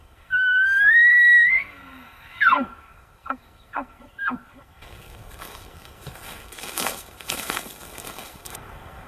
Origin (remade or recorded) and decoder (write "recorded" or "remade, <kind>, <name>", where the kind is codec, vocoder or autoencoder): remade, codec, SNAC